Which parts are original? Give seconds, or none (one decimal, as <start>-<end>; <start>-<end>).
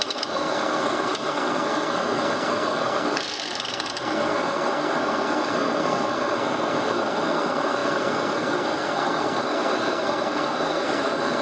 none